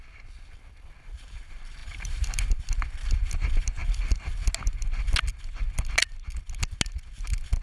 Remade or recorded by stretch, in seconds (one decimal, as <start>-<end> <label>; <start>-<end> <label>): 0.0-1.8 recorded; 1.8-2.4 remade; 2.4-7.6 recorded